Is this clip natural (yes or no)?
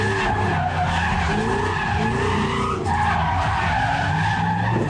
yes